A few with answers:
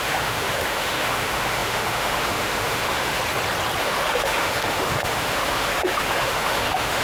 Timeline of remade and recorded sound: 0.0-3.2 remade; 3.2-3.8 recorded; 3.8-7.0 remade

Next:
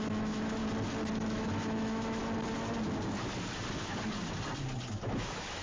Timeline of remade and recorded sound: 0.0-0.6 remade; 0.6-1.1 recorded; 1.1-2.2 remade; 2.2-4.9 recorded; 4.9-5.6 remade

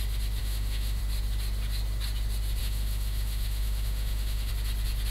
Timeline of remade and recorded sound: 0.0-0.4 recorded; 0.4-1.0 remade; 1.0-2.6 recorded; 2.6-4.5 remade; 4.5-5.1 recorded

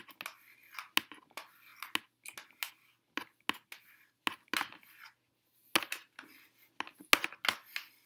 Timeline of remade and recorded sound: 0.0-8.1 recorded

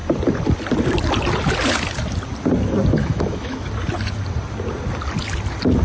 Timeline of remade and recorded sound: 0.0-3.0 recorded; 3.0-3.7 remade; 3.7-5.8 recorded

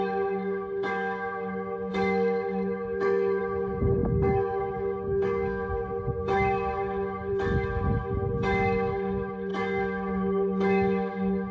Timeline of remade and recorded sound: 0.0-11.5 remade

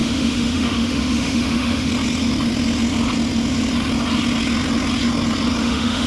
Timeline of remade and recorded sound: 0.0-1.9 remade; 1.9-5.6 recorded; 5.6-6.1 remade

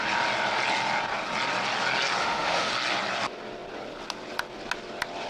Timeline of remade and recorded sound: 0.0-2.2 recorded; 2.2-2.7 remade; 2.7-5.3 recorded